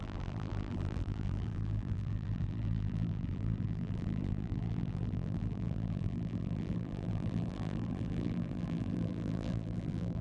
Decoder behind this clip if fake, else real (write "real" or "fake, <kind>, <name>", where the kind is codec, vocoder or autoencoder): fake, vocoder, BigVGAN v2